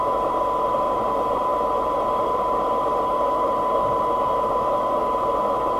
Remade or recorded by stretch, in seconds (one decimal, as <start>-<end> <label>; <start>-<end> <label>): 0.0-1.5 remade; 1.5-2.1 recorded; 2.1-5.0 remade; 5.0-5.8 recorded